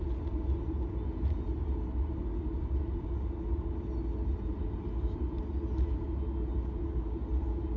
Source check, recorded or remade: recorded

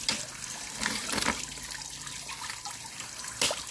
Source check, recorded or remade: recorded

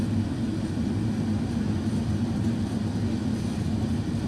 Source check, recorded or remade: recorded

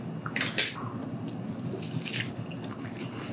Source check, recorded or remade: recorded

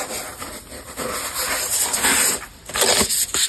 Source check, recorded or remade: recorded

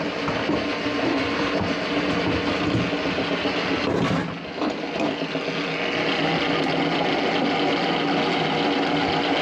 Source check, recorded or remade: recorded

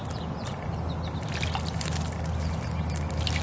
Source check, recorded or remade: recorded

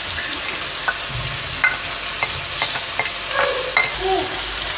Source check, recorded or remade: recorded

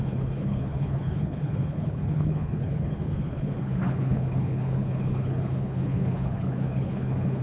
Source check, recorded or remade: remade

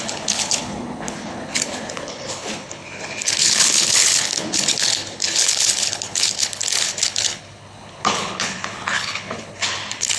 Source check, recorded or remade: remade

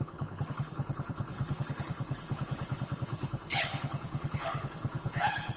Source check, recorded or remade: remade